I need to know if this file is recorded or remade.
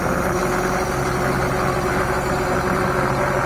recorded